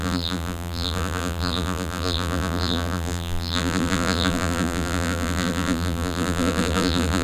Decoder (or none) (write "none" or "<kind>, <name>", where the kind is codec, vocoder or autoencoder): vocoder, BigVGAN v2